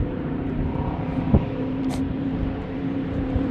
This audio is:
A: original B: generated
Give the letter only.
B